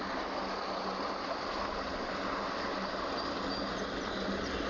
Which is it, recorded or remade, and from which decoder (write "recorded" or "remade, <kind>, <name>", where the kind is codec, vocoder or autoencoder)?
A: recorded